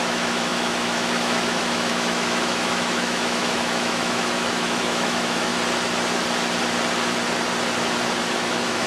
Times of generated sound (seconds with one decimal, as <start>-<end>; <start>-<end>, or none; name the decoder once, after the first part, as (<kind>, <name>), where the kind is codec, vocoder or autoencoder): 0.0-5.5 (autoencoder, DAC-VAE); 8.2-8.9